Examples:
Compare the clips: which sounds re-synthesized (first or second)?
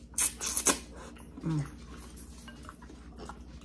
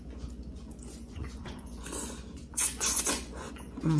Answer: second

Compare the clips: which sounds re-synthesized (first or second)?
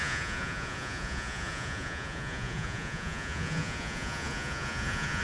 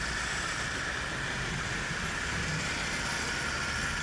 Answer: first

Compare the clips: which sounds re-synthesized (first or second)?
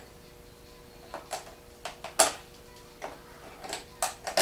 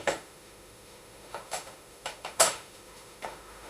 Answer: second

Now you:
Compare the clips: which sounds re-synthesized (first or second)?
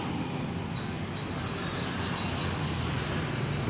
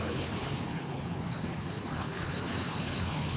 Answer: second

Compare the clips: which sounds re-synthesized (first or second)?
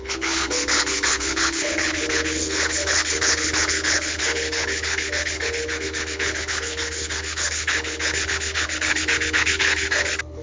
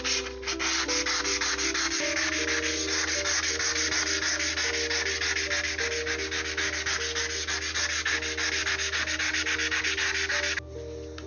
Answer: first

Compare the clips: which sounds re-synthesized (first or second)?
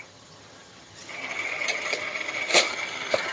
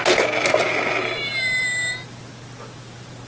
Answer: first